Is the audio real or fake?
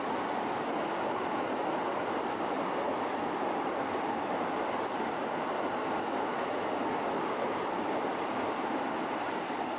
real